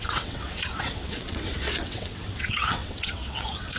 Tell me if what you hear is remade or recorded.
remade